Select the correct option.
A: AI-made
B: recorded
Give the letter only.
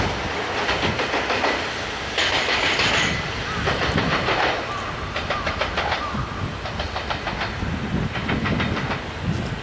B